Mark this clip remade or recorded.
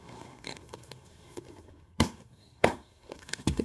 remade